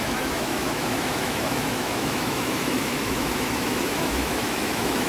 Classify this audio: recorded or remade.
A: remade